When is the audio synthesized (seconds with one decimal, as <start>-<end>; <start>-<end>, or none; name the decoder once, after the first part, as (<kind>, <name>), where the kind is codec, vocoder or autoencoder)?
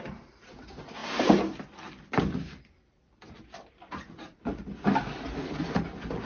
3.9-4.4 (vocoder, Vocos)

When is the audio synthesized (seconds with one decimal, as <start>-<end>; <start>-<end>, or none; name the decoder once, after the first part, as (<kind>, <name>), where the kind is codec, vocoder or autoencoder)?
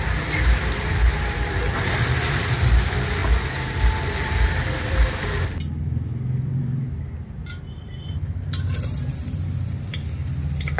0.0-3.2 (vocoder, BigVGAN v2); 3.8-10.8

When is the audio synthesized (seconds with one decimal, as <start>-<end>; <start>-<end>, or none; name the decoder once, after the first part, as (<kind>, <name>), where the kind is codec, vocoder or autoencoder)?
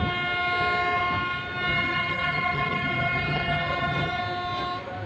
1.7-4.2 (vocoder, HiFi-GAN)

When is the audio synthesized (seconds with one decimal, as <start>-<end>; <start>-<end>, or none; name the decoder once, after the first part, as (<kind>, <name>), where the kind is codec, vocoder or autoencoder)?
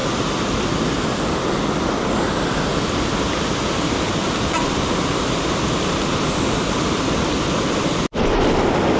none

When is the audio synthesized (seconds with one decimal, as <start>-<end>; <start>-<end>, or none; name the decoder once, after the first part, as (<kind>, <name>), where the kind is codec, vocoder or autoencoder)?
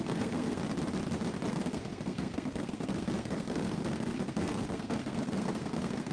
0.0-0.6 (codec, SNAC); 1.5-6.1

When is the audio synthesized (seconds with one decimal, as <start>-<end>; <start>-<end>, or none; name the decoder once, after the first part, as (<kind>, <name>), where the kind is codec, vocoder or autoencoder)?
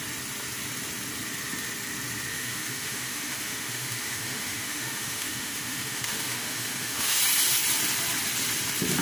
2.3-7.2 (autoencoder, DAC-VAE)